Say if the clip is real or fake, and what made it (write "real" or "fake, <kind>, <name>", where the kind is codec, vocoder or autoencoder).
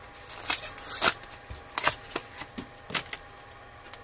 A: real